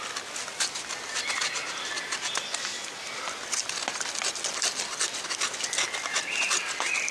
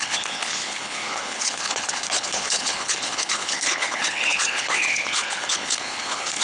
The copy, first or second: second